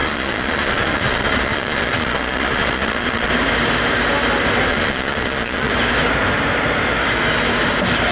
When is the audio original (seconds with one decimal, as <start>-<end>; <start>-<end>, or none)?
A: 3.3-4.7; 5.7-8.1